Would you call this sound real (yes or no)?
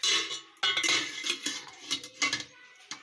yes